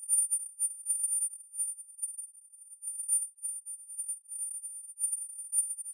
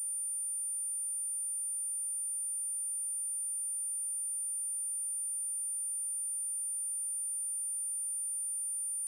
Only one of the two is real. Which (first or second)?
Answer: second